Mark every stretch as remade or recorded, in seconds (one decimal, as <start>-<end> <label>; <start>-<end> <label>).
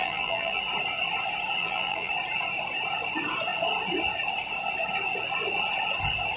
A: 0.0-0.6 remade; 0.6-1.6 recorded; 1.6-2.1 remade; 2.1-6.4 recorded